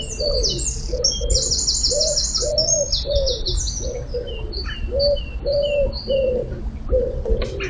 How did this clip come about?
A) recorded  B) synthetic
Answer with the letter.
A